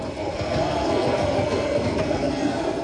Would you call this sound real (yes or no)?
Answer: no